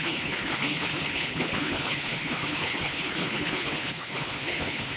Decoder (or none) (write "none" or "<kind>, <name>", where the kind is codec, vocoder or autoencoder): codec, HILCodec